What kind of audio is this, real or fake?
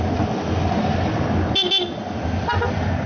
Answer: real